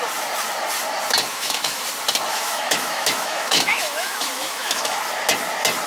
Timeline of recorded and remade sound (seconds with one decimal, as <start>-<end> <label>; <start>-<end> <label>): 0.0-1.3 recorded; 1.3-1.8 remade; 1.8-2.3 recorded; 2.3-5.0 remade; 5.0-5.9 recorded